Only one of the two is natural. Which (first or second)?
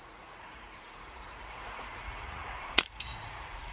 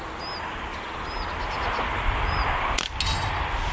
second